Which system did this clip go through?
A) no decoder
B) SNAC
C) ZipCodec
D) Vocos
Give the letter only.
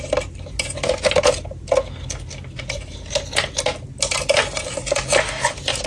A